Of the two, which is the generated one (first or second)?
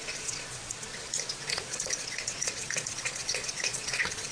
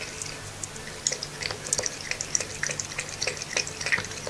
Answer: first